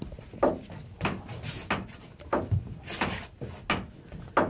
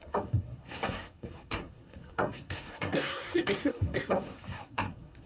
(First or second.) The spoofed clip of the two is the second